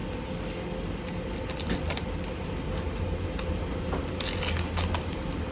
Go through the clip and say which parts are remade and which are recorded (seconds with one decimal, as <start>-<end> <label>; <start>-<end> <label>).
0.0-5.5 recorded

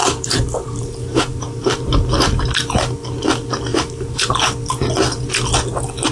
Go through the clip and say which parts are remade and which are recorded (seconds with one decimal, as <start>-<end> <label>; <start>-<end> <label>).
0.0-1.7 remade; 1.7-3.7 recorded; 3.7-4.4 remade; 4.4-6.1 recorded